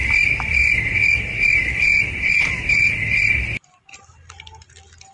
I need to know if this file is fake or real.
real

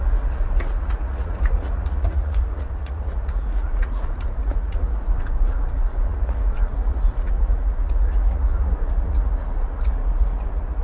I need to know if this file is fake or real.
fake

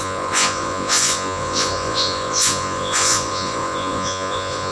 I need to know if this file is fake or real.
fake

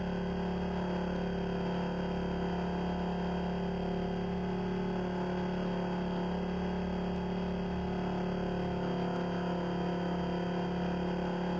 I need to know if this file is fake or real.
real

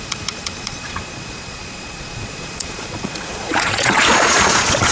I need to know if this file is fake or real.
fake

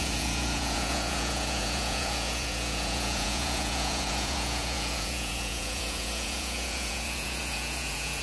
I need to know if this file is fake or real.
fake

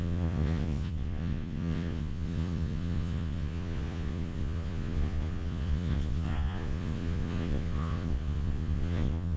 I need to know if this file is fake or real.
fake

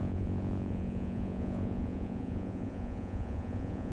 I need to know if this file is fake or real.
fake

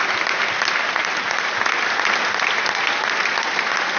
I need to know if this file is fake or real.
real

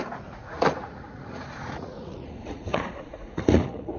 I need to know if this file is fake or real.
fake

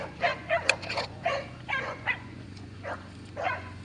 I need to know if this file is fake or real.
fake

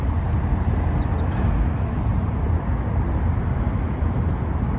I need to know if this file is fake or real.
real